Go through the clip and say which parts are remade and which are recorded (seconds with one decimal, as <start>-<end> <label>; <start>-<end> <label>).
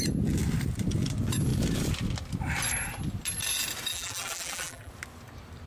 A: 0.0-3.9 recorded; 3.9-4.9 remade; 4.9-5.7 recorded